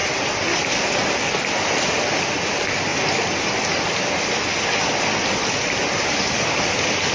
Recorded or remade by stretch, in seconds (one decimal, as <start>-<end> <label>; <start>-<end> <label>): 0.0-2.2 remade; 2.2-7.1 recorded